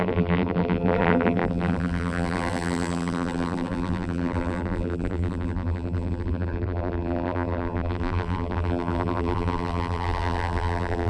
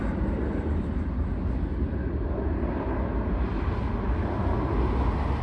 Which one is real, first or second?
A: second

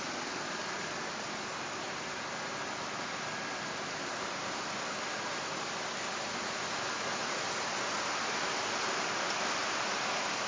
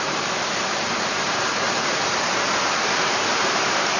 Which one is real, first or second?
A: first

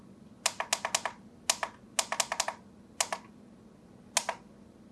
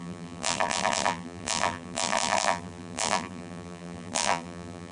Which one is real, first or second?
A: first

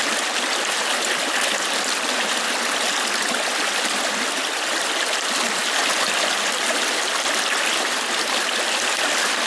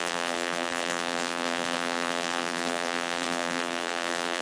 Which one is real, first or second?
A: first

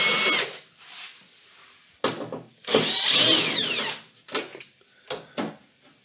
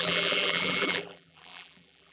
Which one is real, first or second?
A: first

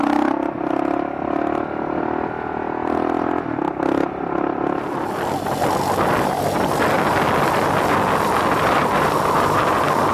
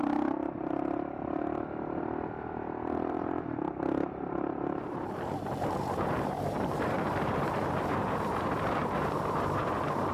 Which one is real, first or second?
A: first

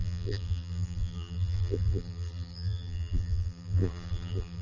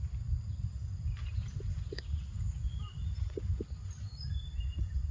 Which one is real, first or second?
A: second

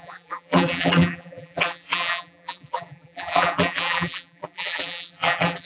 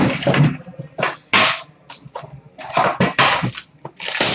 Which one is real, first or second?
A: second